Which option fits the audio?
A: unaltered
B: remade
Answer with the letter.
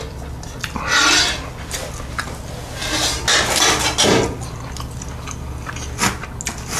A